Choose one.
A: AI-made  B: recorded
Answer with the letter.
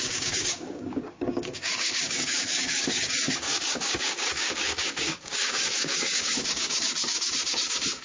A